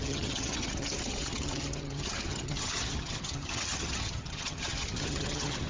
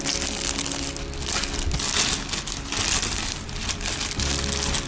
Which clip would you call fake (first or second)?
first